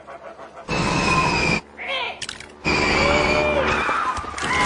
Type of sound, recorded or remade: recorded